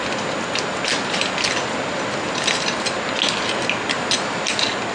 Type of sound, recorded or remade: recorded